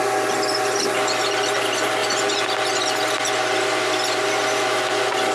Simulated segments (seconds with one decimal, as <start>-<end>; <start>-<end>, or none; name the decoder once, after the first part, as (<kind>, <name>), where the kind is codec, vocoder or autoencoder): none